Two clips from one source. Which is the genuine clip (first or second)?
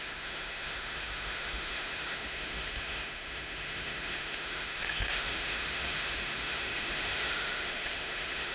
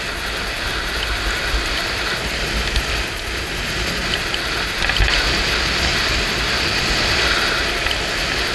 second